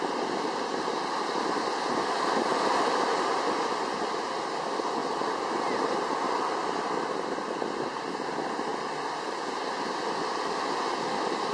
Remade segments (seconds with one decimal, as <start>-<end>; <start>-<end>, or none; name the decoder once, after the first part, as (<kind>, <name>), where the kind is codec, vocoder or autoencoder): none